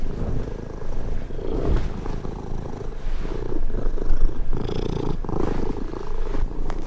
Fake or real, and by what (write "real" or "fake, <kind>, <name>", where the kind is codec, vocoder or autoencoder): real